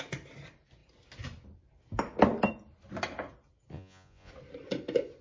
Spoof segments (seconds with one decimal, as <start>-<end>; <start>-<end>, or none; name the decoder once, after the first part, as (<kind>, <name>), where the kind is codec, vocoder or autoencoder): 3.7-4.3 (vocoder, Vocos)